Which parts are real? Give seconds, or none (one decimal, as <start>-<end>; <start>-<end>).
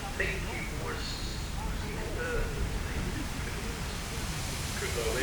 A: 0.0-1.3; 3.9-5.2